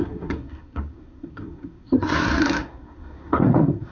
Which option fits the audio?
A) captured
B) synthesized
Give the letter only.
B